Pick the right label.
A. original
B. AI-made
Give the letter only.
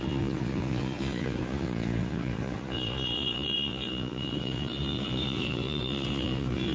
B